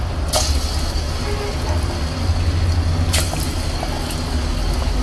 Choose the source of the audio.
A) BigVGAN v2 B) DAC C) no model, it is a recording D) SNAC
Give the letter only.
C